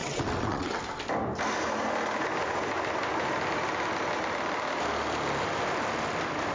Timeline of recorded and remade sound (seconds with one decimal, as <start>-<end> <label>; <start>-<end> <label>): 0.0-0.8 remade; 0.8-6.5 recorded